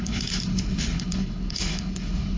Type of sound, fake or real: fake